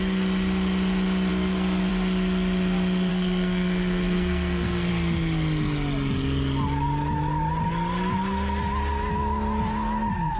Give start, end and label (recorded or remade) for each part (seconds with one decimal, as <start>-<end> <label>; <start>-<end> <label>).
0.0-1.3 recorded; 1.3-1.9 remade; 1.9-3.1 recorded; 3.1-4.9 remade; 4.9-10.4 recorded